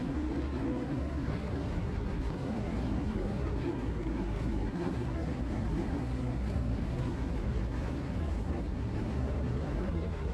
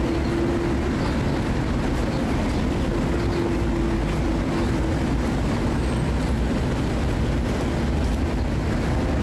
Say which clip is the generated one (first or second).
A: first